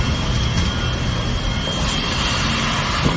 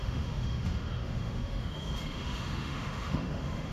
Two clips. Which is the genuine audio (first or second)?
first